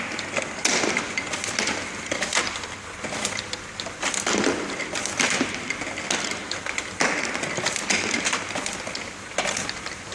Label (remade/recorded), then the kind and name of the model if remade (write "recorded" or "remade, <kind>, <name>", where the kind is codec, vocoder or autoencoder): recorded